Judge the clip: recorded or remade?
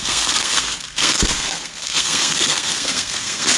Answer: remade